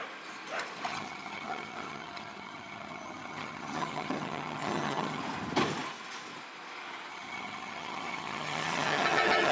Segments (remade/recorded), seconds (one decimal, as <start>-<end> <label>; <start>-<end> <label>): 0.0-0.9 recorded; 0.9-5.2 remade; 5.2-7.1 recorded; 7.1-9.5 remade